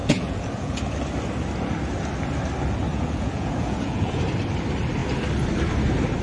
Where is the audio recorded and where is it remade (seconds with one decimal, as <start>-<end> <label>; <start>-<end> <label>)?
0.0-0.8 remade; 0.8-2.9 recorded; 2.9-4.2 remade; 4.2-6.2 recorded